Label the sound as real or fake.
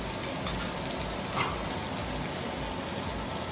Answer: real